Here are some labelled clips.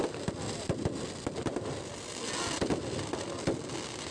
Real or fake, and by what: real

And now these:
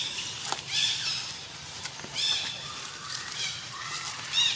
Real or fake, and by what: fake, vocoder, BigVGAN v2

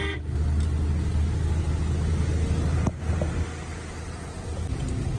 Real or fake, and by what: real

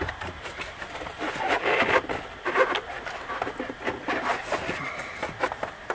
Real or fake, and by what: real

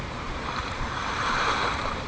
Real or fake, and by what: fake, vocoder, BigVGAN v2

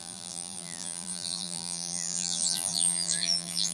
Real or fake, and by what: fake, vocoder, BigVGAN v2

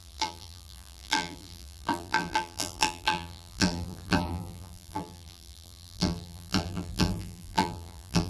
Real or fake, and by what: fake, vocoder, BigVGAN v2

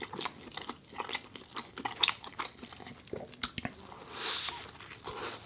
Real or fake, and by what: real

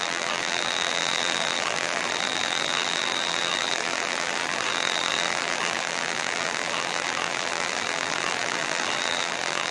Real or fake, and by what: fake, vocoder, BigVGAN v2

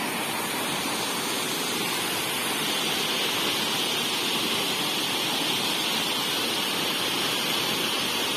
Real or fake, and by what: real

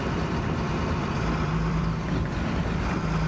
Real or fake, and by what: fake, vocoder, BigVGAN v2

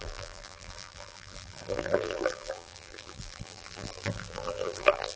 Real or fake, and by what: fake, vocoder, BigVGAN v2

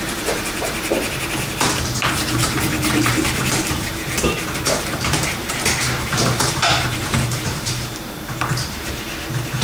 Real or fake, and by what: fake, vocoder, BigVGAN v2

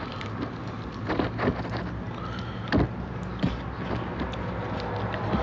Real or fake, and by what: real